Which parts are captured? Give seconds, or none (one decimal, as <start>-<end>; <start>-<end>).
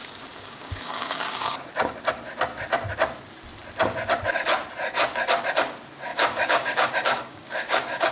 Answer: 1.7-6.1